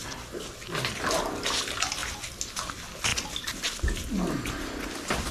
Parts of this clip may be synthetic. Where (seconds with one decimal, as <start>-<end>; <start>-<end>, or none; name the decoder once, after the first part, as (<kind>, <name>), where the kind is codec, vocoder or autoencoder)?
none

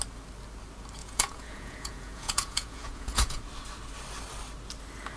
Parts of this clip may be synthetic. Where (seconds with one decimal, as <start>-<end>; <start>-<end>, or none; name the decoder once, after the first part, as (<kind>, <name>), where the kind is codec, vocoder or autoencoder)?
1.0-3.4 (vocoder, Vocos)

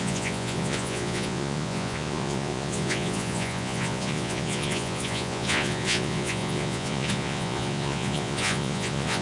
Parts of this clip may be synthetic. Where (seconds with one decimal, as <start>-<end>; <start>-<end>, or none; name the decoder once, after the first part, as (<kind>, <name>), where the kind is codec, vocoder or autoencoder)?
0.0-9.2 (vocoder, Vocos)

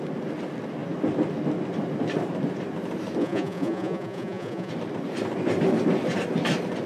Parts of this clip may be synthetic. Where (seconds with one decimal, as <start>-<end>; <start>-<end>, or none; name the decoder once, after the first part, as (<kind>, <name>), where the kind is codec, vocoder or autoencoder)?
3.2-4.7 (vocoder, Vocos)